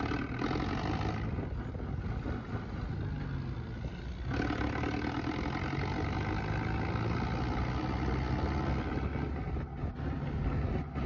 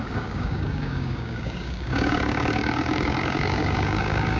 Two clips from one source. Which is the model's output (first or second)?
second